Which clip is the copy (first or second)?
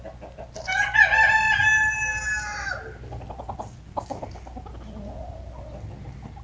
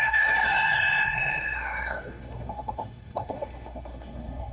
second